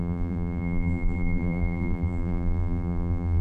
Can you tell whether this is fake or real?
fake